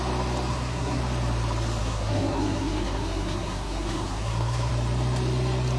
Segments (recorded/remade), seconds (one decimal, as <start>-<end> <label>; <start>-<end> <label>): 0.0-0.5 recorded; 0.5-1.0 remade; 1.0-1.8 recorded; 1.8-4.7 remade; 4.7-5.8 recorded